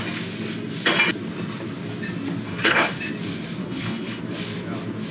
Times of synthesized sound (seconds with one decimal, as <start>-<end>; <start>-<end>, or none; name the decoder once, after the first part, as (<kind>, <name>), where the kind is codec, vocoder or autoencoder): 2.5-3.0 (codec, HILCodec); 3.6-4.2